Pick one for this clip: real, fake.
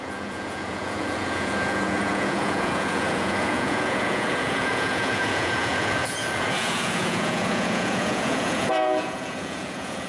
fake